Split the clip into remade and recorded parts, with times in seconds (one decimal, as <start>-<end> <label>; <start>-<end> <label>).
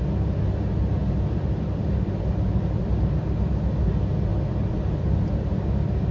0.0-1.0 recorded; 1.0-3.2 remade; 3.2-4.3 recorded; 4.3-5.5 remade; 5.5-6.1 recorded